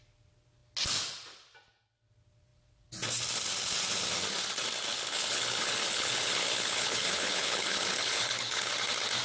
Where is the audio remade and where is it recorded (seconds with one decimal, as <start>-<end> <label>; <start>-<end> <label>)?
0.0-4.9 recorded; 4.9-8.7 remade; 8.7-9.2 recorded